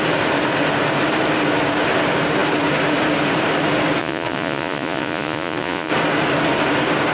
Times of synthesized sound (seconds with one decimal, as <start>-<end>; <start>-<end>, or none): 4.0-5.9